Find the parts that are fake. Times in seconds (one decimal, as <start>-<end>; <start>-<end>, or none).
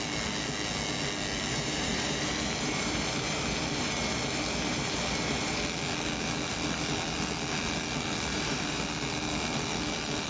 1.5-5.6; 8.3-8.8